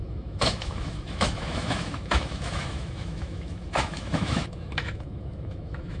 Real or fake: fake